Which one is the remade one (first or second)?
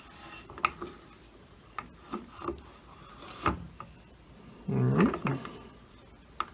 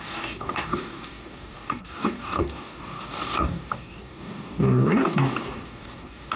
second